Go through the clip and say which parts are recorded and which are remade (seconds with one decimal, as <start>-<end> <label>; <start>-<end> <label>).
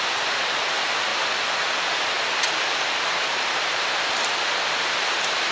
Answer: 0.0-1.1 remade; 1.1-3.6 recorded; 3.6-5.5 remade